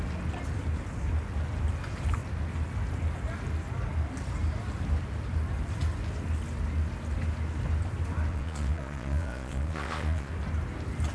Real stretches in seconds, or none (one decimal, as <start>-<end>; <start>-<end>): 0.0-8.3; 10.3-11.1

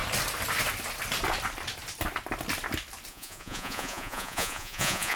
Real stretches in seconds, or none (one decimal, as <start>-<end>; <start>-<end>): 0.0-3.1

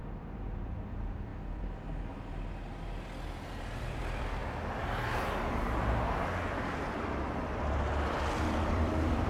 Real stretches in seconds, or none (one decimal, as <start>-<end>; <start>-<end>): 1.3-3.6; 4.4-8.3